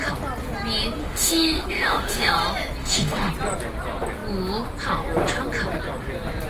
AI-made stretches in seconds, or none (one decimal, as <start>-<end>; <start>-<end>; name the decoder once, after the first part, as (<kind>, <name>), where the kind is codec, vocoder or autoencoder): 1.0-2.3 (autoencoder, DAC-VAE); 2.8-3.3